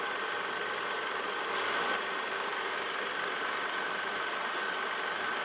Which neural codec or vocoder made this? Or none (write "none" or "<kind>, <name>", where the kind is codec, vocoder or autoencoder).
none